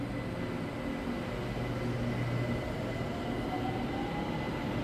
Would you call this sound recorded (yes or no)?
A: yes